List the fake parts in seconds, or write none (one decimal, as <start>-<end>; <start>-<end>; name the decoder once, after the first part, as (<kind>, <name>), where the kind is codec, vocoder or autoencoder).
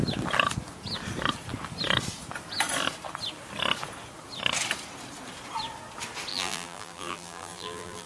6.3-8.1 (vocoder, BigVGAN v2)